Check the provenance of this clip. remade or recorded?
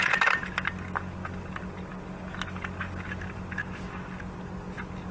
recorded